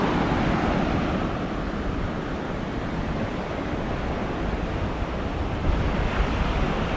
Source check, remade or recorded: recorded